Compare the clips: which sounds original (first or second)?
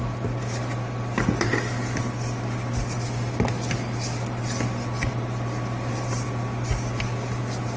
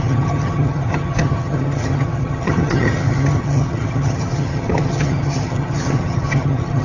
first